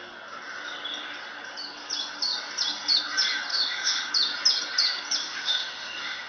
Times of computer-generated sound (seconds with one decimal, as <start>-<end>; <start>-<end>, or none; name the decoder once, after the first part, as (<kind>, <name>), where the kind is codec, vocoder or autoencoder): 3.5-4.1 (autoencoder, DAC-VAE); 5.2-6.3